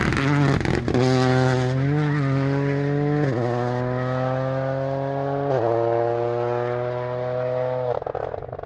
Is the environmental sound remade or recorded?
recorded